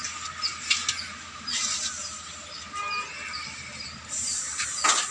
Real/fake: real